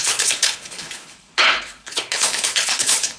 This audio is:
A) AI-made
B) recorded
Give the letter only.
A